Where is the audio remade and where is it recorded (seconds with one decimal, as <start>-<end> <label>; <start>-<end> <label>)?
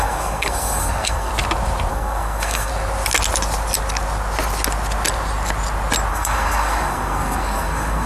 0.0-1.3 remade; 1.3-1.9 recorded; 1.9-2.7 remade; 2.7-6.1 recorded; 6.1-8.1 remade